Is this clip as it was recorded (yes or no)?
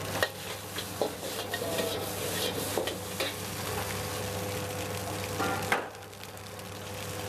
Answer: yes